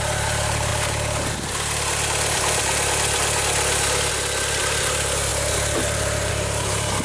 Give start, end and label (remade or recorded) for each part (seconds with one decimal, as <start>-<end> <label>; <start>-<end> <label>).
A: 0.0-7.0 recorded